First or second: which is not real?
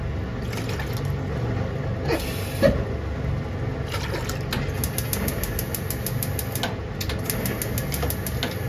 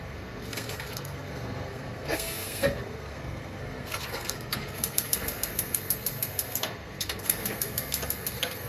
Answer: second